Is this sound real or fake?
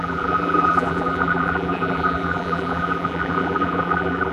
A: fake